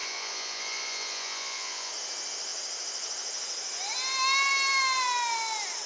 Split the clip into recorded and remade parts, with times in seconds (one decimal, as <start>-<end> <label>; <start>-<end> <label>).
0.0-1.9 remade; 1.9-5.9 recorded